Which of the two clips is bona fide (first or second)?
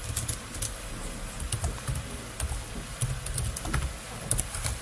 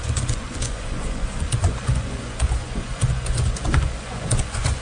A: first